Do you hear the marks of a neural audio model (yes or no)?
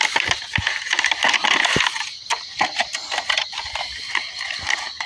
yes